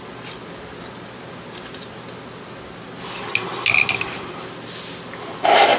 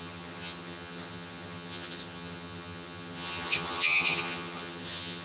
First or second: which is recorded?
first